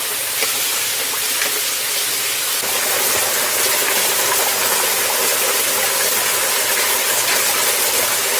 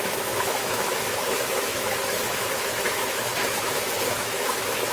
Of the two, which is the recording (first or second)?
first